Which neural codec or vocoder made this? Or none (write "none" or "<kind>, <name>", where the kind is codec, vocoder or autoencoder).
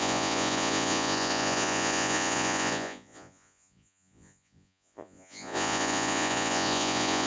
vocoder, Vocos